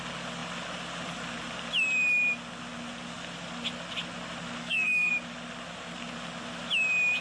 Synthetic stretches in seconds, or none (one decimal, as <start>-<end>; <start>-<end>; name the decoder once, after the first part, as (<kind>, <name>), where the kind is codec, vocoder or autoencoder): 4.6-5.1 (codec, SNAC)